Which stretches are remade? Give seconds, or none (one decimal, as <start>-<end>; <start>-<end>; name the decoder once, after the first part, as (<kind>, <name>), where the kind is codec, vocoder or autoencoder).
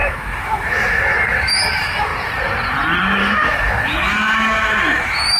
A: 0.0-2.1 (autoencoder, DAC-VAE); 3.0-5.4